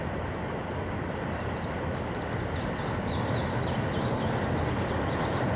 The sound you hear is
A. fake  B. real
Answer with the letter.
B